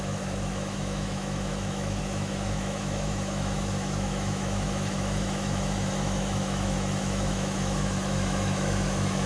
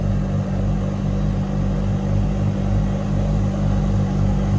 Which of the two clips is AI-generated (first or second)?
first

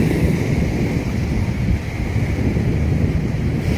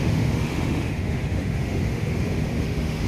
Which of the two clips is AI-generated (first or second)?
second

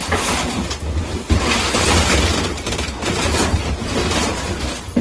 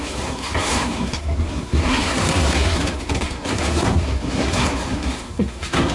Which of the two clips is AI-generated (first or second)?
second